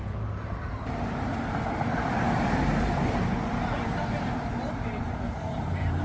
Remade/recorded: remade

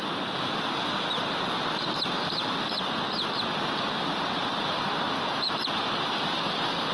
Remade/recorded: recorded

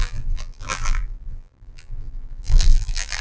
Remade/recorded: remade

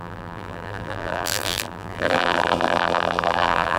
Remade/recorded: remade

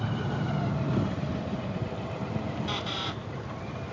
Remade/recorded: remade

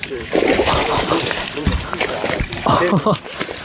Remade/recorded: remade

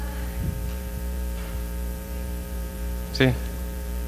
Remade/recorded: remade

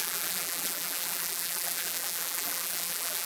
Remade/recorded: remade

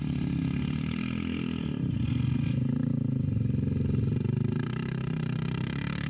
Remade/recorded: recorded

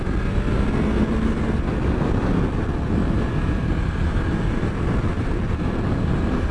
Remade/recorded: recorded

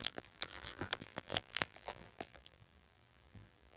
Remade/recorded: remade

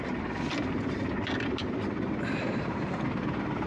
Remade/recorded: remade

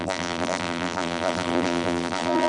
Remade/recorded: remade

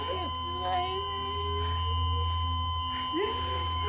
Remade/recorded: recorded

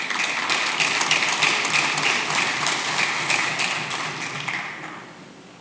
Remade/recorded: recorded